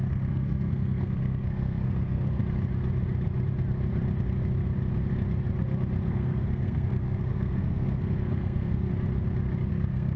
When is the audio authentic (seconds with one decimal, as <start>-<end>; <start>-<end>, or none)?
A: 2.4-6.1; 8.9-9.7